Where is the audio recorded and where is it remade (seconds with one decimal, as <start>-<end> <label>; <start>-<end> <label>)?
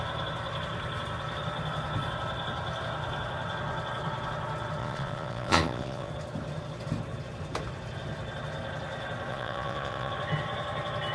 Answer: 0.0-4.8 recorded; 4.8-6.1 remade; 6.1-9.3 recorded; 9.3-10.1 remade; 10.1-11.1 recorded